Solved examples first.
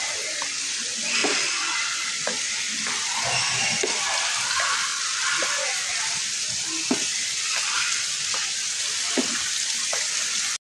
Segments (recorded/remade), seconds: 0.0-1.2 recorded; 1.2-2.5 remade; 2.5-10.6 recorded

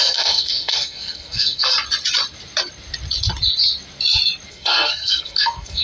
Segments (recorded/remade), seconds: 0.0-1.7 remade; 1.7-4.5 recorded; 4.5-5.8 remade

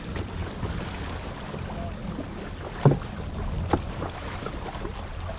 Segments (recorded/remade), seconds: 0.0-5.4 recorded

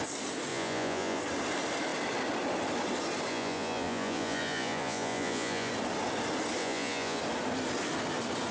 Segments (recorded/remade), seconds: 0.0-0.5 recorded; 0.5-1.2 remade; 1.2-3.3 recorded; 3.3-5.7 remade; 5.7-6.6 recorded; 6.6-7.2 remade; 7.2-8.5 recorded

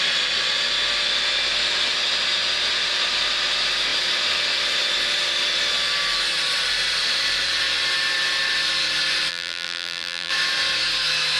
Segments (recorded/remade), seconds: 0.0-9.3 recorded; 9.3-10.3 remade; 10.3-11.4 recorded

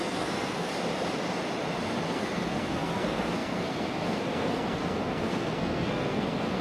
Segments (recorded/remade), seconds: 0.0-0.7 remade; 0.7-2.1 recorded; 2.1-6.6 remade